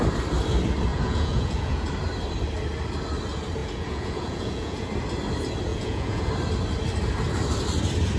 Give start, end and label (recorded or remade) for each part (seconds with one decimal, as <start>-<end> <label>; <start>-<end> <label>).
0.0-0.9 recorded; 0.9-1.9 remade; 1.9-3.6 recorded; 3.6-4.9 remade; 4.9-5.7 recorded; 5.7-6.3 remade; 6.3-8.2 recorded

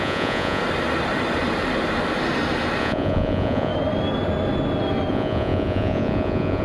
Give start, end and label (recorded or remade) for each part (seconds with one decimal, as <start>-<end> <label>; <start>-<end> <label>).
0.0-0.6 remade; 0.6-2.8 recorded; 2.8-3.7 remade; 3.7-5.1 recorded; 5.1-6.6 remade

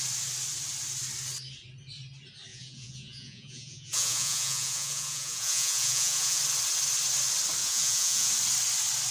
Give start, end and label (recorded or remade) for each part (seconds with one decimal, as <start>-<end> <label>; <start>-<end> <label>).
0.0-2.5 recorded; 2.5-6.4 remade; 6.4-7.6 recorded; 7.6-8.3 remade; 8.3-9.1 recorded

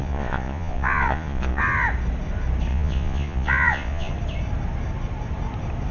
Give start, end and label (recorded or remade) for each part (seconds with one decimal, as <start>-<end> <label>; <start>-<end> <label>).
0.0-1.6 remade; 1.6-2.7 recorded; 2.7-4.1 remade; 4.1-5.9 recorded

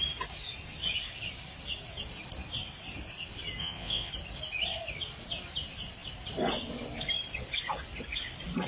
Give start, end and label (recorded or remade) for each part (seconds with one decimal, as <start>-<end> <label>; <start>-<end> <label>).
0.0-3.6 recorded; 3.6-4.1 remade; 4.1-8.7 recorded

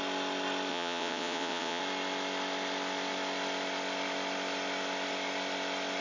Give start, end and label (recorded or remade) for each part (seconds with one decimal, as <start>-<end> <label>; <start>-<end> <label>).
0.0-0.7 recorded; 0.7-1.8 remade; 1.8-6.0 recorded

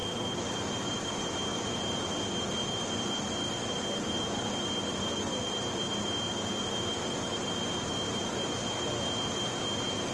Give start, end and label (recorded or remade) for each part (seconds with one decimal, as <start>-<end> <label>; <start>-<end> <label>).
0.0-10.1 recorded